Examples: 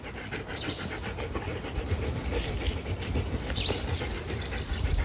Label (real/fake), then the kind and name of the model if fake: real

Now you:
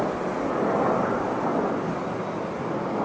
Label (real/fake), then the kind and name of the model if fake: real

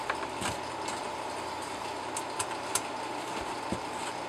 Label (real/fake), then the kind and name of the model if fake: real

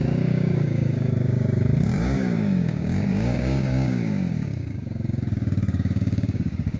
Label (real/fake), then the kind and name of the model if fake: fake, codec, DAC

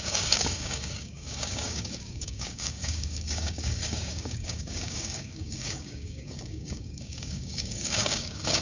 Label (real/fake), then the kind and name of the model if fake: fake, codec, DAC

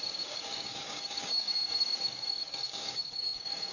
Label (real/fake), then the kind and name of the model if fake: fake, codec, DAC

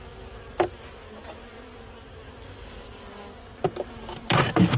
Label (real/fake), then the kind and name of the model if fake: real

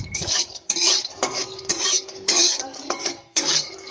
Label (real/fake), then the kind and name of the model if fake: fake, codec, DAC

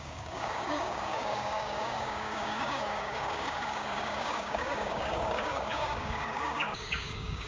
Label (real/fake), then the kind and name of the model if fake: fake, codec, DAC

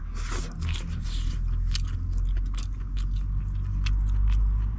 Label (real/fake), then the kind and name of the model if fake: real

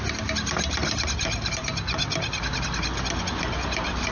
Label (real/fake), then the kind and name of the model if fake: real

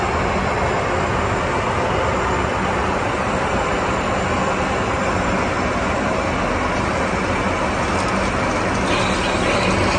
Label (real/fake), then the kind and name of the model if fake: real